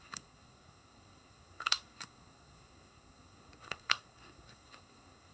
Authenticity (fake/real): fake